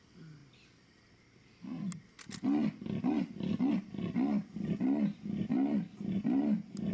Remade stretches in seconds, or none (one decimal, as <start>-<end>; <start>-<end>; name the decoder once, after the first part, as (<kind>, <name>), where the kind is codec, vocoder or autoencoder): none

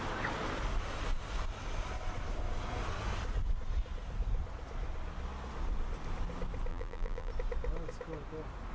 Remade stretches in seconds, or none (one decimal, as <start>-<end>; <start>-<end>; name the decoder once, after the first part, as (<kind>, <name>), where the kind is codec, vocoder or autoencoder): 6.7-7.3 (vocoder, BigVGAN v2)

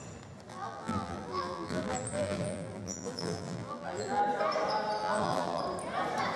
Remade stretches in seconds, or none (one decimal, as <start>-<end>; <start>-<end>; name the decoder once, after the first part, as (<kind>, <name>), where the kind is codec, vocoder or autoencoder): 0.5-4.2 (vocoder, BigVGAN v2); 5.0-5.6

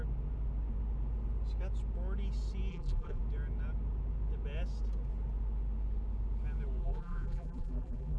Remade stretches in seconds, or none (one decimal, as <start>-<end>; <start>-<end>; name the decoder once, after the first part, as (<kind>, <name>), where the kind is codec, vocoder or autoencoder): 2.7-3.2 (vocoder, BigVGAN v2); 6.8-8.2